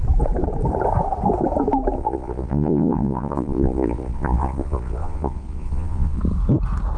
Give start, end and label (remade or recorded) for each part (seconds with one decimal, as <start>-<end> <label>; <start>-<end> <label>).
0.0-2.0 recorded; 2.0-6.2 remade; 6.2-7.0 recorded